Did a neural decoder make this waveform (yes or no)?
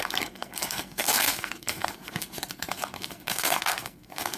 yes